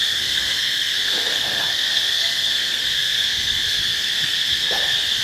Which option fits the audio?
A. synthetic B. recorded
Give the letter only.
A